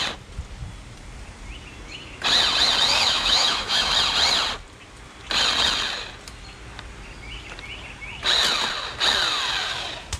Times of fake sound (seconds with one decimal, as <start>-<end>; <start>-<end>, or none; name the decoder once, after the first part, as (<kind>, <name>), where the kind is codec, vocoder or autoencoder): 3.0-3.9 (autoencoder, DAC-VAE)